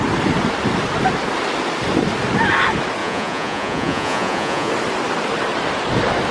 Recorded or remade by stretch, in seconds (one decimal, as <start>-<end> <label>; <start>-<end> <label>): 0.0-3.0 recorded; 3.0-4.7 remade; 4.7-6.3 recorded